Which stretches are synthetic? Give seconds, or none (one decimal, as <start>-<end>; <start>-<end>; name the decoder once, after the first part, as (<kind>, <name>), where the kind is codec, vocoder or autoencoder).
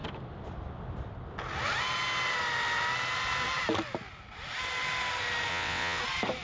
5.5-6.0 (vocoder, WaveNeXt)